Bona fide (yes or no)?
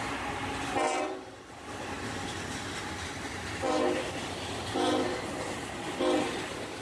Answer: yes